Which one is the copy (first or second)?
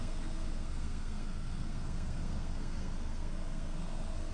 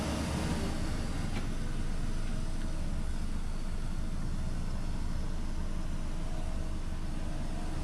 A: first